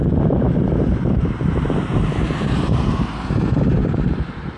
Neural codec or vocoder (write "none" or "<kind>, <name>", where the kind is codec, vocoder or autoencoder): vocoder, BigVGAN v2